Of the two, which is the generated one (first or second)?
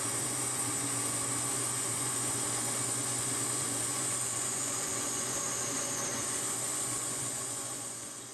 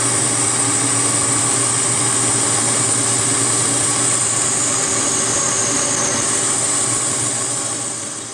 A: first